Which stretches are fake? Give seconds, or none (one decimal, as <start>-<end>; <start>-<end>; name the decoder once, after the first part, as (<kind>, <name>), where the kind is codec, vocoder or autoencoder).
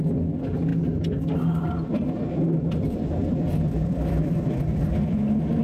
1.9-5.6 (vocoder, BigVGAN v2)